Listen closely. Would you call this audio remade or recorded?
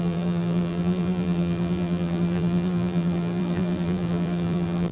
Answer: remade